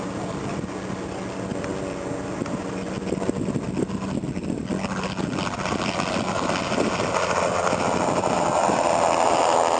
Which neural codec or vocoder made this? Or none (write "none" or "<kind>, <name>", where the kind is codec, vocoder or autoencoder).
none